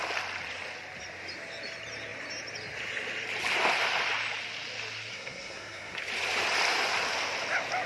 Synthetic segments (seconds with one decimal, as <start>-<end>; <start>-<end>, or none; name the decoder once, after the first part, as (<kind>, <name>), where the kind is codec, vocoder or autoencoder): 5.1-6.0 (codec, SNAC)